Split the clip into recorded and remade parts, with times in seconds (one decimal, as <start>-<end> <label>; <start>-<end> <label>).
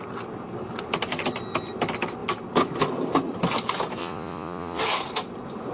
0.0-4.0 recorded; 4.0-4.8 remade; 4.8-5.7 recorded